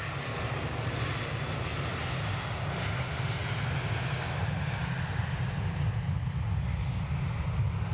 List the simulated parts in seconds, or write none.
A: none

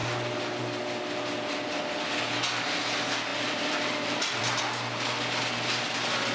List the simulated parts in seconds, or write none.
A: 3.3-4.6 (vocoder, BigVGAN v2)

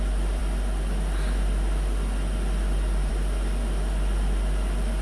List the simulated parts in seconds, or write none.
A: none

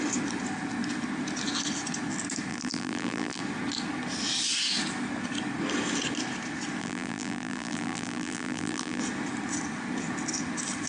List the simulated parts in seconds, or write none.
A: 2.5-3.4 (vocoder, BigVGAN v2); 6.8-9.0

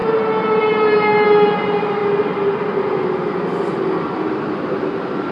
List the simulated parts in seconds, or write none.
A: 0.6-2.0 (vocoder, BigVGAN v2)

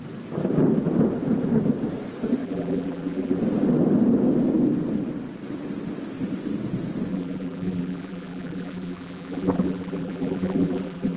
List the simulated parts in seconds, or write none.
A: 2.4-3.4 (vocoder, BigVGAN v2); 7.1-11.2